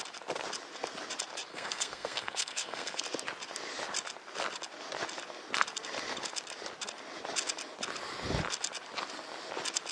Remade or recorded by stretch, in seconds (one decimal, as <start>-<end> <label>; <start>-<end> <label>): 0.0-1.5 recorded; 1.5-3.0 remade; 3.0-9.9 recorded